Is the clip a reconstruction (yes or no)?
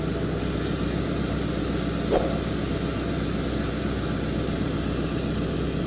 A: no